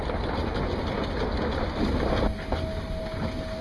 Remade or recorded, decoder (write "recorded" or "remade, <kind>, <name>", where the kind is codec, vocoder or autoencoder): recorded